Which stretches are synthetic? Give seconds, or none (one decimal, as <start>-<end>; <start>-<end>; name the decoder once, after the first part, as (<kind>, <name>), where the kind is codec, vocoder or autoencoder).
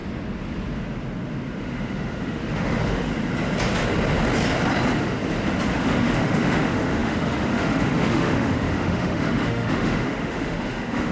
1.6-3.1 (autoencoder, DAC-VAE); 5.7-11.1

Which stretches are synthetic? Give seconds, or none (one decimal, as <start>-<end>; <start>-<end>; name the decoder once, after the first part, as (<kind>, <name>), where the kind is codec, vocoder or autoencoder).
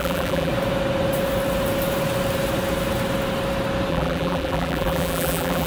0.0-0.5 (vocoder, BigVGAN v2); 3.9-5.7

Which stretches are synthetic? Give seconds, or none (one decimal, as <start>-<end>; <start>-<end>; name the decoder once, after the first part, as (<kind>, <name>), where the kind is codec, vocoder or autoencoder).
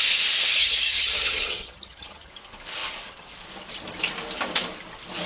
0.6-2.3 (vocoder, HiFi-GAN)